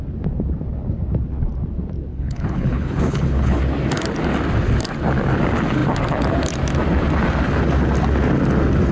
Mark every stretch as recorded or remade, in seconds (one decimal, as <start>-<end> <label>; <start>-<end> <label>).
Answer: 0.0-2.1 recorded; 2.1-3.6 remade; 3.6-8.9 recorded